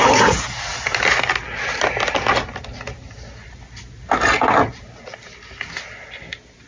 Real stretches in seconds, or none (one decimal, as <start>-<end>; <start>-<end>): 0.0-6.7